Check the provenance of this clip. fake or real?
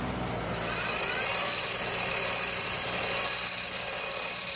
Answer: real